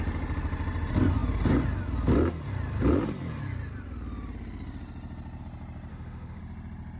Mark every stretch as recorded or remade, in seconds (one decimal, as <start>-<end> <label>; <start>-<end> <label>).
0.0-5.9 recorded; 5.9-6.4 remade; 6.4-7.0 recorded